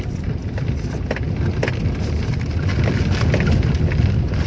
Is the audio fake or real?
real